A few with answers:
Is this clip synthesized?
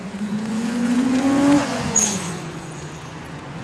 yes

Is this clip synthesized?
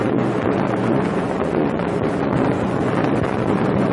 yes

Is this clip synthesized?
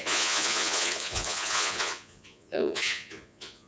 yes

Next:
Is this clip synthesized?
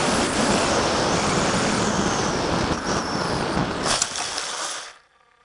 no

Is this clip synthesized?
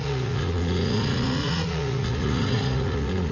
yes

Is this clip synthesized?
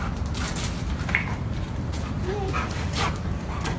no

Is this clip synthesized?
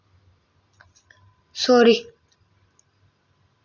no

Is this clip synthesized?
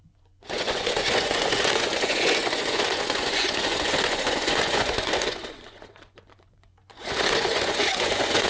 yes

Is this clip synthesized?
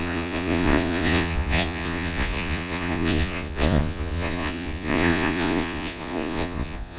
yes